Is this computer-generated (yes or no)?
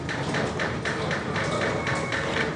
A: no